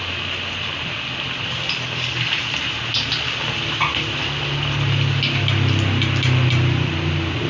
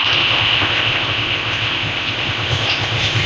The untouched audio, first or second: first